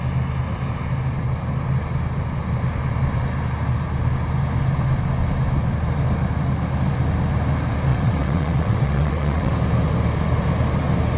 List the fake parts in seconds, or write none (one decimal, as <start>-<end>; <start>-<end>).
7.9-9.5